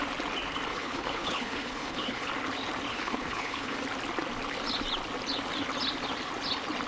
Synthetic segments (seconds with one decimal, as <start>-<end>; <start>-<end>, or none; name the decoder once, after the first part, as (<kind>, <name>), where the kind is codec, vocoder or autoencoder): 0.7-2.3 (codec, HILCodec); 2.9-3.8